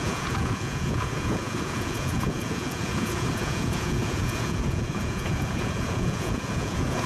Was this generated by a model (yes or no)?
yes